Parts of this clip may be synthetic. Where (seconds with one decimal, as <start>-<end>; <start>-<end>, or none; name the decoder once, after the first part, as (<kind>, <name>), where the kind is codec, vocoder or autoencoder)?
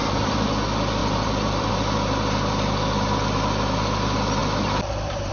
0.0-0.5 (vocoder, BigVGAN v2); 1.0-1.7; 4.4-5.3